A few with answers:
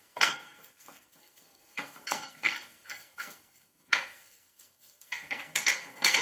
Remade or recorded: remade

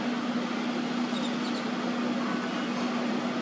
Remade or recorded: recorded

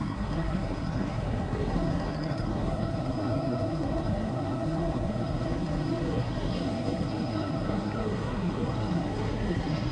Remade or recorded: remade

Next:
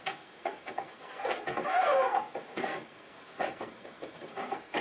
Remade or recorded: remade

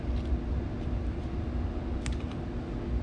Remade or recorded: recorded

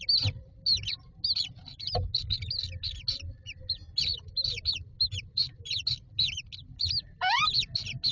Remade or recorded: recorded